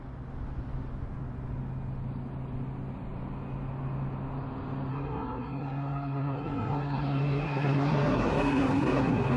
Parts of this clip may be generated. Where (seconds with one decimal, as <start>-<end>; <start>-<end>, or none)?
4.9-9.4